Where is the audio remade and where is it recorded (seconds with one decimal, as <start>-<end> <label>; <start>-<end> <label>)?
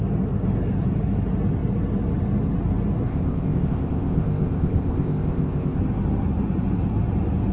0.0-3.1 recorded; 3.1-5.8 remade; 5.8-7.5 recorded